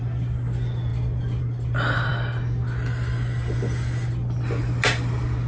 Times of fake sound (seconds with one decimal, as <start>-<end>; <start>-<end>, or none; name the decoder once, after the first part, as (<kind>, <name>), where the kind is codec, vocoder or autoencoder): none